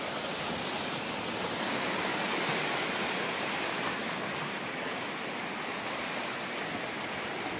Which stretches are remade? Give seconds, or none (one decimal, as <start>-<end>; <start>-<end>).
none